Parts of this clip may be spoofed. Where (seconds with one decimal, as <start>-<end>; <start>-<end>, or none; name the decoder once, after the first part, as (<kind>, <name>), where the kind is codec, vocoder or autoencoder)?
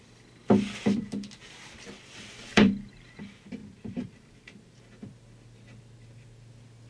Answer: 2.5-3.2 (vocoder, BigVGAN v2); 3.6-4.8